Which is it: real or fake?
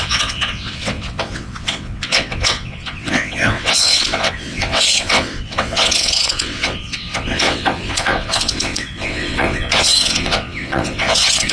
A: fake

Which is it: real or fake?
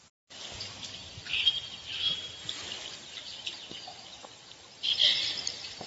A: real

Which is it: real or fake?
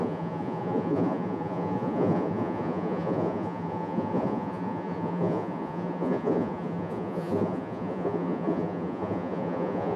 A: fake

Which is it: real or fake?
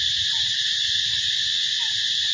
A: real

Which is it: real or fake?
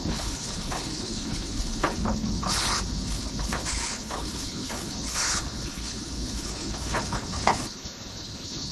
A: fake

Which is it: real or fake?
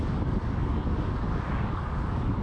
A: fake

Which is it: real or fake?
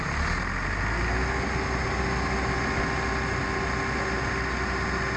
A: real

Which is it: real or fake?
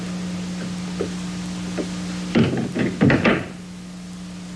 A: real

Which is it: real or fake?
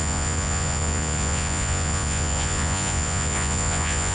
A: fake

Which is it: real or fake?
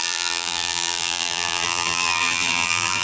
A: fake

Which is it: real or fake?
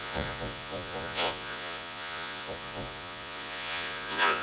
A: fake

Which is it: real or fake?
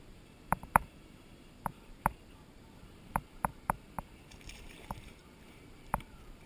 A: fake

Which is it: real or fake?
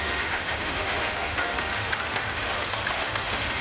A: fake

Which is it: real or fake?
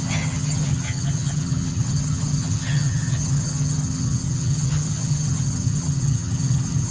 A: fake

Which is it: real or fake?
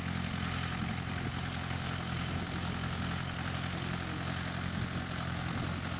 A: real